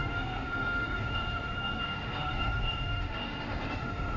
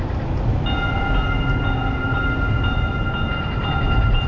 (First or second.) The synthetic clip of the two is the first